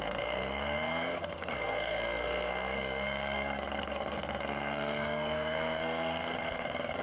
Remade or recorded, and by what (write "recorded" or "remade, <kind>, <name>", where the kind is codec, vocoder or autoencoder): remade, codec, SNAC